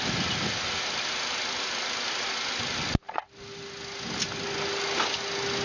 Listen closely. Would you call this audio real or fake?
real